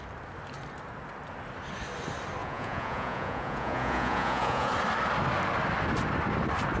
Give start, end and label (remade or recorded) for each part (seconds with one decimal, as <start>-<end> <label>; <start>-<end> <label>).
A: 0.0-2.4 recorded; 2.4-4.7 remade; 4.7-6.8 recorded